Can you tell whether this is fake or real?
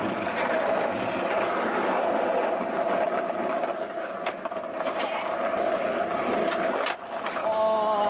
real